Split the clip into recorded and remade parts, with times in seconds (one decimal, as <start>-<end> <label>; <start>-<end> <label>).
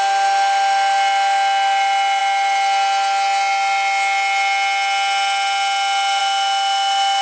0.0-7.2 recorded